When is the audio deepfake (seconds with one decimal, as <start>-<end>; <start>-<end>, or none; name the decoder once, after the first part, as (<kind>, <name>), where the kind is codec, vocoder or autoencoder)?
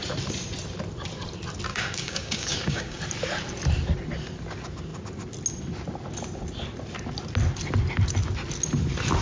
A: 1.7-3.0 (codec, DAC)